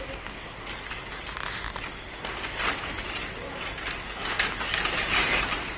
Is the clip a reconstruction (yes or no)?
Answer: no